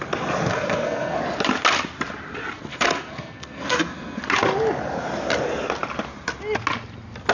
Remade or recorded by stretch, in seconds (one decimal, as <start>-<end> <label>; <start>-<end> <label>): 0.0-0.5 recorded; 0.5-1.2 remade; 1.2-2.7 recorded; 2.7-4.2 remade; 4.2-7.3 recorded